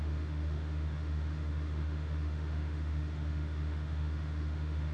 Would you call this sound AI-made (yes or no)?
yes